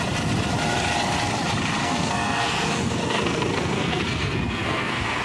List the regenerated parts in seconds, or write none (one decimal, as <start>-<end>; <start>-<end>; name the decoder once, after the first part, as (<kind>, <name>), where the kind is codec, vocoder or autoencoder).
1.8-5.2 (codec, SNAC)